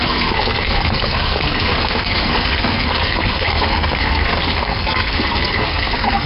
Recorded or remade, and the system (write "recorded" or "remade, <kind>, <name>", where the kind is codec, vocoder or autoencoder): remade, codec, SNAC